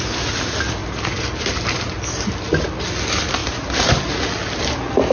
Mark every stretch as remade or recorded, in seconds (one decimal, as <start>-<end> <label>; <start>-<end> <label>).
0.0-0.8 recorded; 0.8-1.8 remade; 1.8-3.4 recorded; 3.4-4.0 remade; 4.0-5.1 recorded